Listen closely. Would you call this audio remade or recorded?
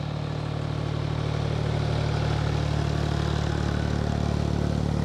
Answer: recorded